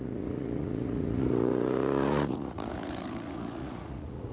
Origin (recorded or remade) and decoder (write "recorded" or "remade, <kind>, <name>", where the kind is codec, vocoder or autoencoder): remade, vocoder, Vocos